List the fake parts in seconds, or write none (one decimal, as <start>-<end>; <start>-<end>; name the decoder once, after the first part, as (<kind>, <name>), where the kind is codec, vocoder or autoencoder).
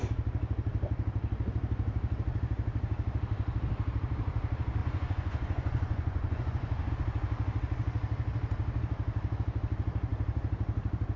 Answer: 4.8-6.9 (vocoder, Vocos)